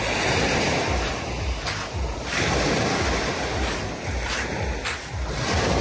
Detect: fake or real real